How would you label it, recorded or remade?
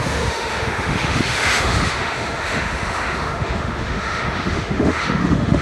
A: remade